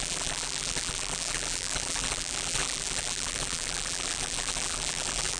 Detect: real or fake fake